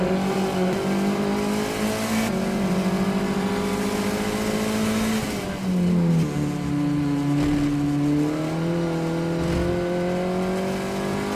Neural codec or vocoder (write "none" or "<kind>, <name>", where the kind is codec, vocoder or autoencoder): none